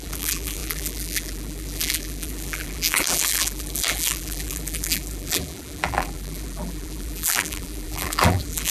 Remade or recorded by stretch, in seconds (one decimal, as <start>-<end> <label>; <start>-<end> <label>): 0.0-8.7 remade